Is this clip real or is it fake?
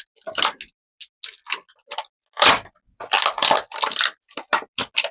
real